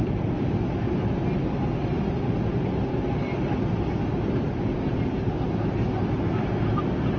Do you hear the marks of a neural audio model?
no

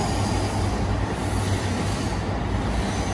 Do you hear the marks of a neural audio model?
no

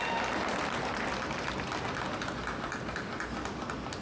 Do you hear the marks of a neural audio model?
no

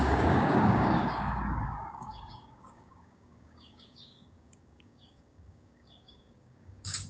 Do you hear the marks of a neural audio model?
yes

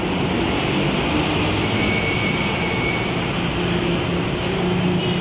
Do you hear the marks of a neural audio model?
no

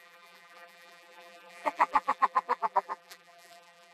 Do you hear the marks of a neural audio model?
yes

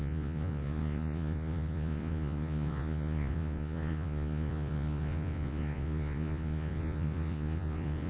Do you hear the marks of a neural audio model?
yes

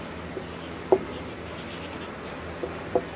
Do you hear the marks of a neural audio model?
no